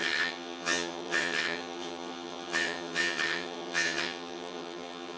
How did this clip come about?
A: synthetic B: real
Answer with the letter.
A